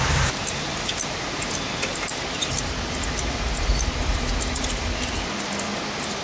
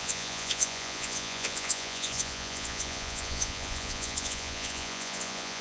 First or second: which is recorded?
first